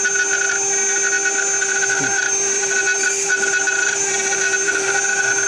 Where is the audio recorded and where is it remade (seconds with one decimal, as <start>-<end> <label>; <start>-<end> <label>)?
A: 0.0-1.6 recorded; 1.6-4.9 remade; 4.9-5.5 recorded